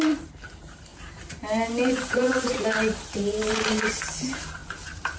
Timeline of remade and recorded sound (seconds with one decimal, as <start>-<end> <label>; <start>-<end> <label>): 0.0-5.2 remade